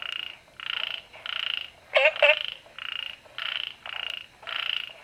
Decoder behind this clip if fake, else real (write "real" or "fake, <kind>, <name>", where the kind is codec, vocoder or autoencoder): real